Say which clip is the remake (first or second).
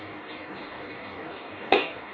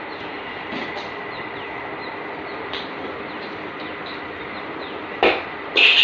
first